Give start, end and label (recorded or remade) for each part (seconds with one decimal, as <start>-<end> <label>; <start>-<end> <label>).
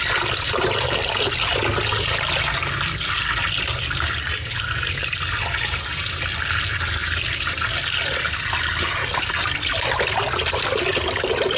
0.0-11.6 recorded